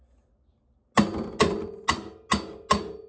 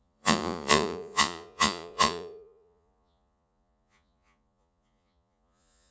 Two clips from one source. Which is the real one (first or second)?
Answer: first